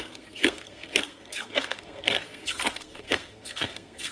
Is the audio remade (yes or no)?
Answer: yes